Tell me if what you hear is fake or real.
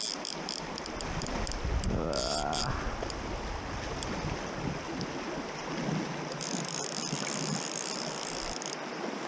real